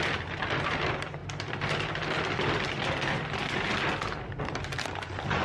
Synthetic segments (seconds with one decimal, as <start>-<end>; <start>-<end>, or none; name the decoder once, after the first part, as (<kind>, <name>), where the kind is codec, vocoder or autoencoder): 0.0-1.2 (vocoder, BigVGAN v2); 4.4-5.4